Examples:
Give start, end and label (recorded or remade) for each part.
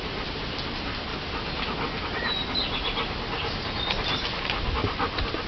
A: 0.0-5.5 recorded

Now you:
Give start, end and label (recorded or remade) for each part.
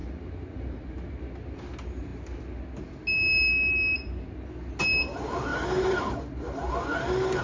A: 0.0-1.2 remade; 1.2-5.5 recorded; 5.5-6.7 remade; 6.7-7.4 recorded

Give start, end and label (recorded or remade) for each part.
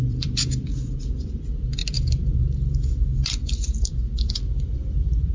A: 0.0-1.8 remade; 1.8-3.8 recorded; 3.8-5.3 remade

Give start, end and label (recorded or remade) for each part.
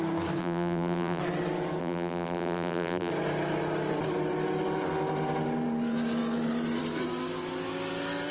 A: 0.0-0.4 recorded; 0.4-1.2 remade; 1.2-1.8 recorded; 1.8-3.1 remade; 3.1-8.3 recorded